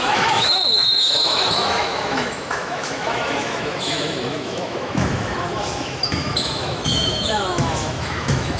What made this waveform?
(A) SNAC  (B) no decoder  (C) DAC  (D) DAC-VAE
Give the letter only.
D